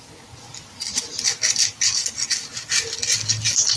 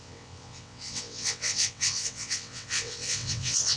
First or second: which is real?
first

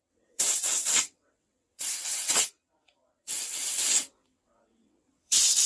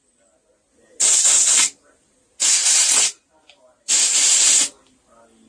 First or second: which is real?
second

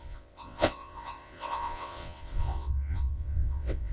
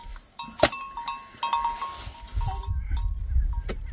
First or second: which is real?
second